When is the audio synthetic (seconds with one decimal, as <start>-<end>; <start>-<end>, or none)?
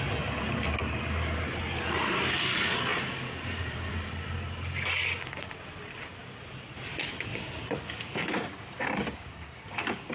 7.3-10.1